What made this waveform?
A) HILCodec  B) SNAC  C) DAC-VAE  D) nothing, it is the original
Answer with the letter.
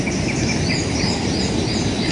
D